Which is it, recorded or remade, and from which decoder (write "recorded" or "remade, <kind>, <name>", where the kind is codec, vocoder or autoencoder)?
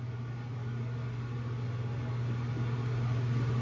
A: recorded